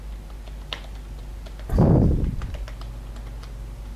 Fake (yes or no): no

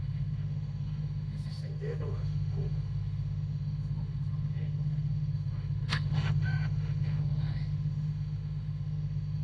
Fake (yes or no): yes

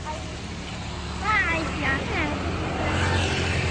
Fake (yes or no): no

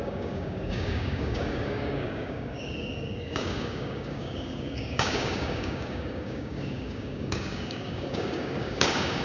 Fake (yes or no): yes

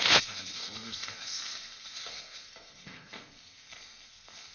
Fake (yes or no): yes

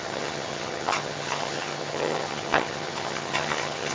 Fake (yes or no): yes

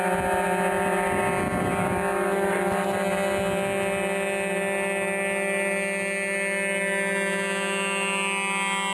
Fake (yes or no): no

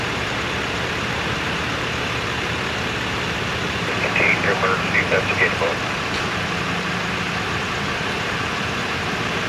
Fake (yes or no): yes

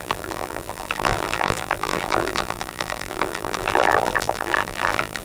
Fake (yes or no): yes